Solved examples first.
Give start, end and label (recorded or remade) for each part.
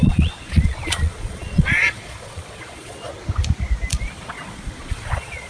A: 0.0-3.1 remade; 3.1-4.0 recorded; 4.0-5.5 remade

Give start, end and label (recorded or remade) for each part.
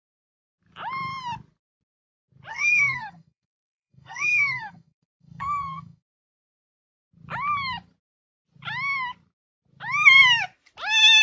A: 0.0-2.5 recorded; 2.5-6.8 remade; 6.8-11.2 recorded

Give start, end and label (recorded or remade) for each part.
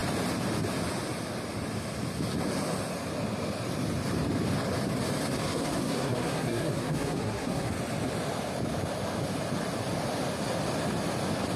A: 0.0-5.4 recorded; 5.4-7.7 remade; 7.7-11.6 recorded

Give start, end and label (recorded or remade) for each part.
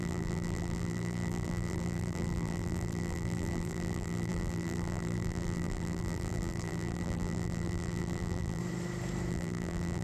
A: 0.0-8.6 remade; 8.6-9.3 recorded; 9.3-10.0 remade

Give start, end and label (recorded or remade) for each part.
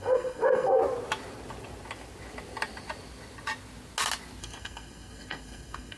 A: 0.0-0.8 remade; 0.8-4.4 recorded; 4.4-6.0 remade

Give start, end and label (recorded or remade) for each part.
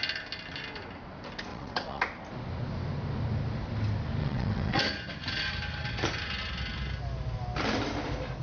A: 0.0-1.5 recorded; 1.5-2.0 remade; 2.0-4.2 recorded; 4.2-4.8 remade; 4.8-8.4 recorded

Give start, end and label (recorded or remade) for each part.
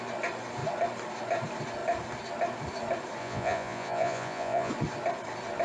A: 0.0-3.2 recorded; 3.2-4.7 remade; 4.7-5.6 recorded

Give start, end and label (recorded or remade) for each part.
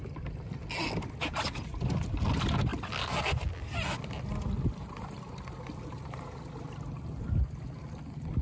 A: 0.0-8.4 recorded